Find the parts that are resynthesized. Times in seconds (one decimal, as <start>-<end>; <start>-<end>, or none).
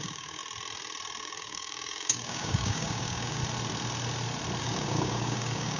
0.0-0.4; 1.2-3.4; 4.6-5.8